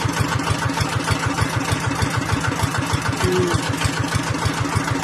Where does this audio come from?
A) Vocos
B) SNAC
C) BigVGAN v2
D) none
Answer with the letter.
D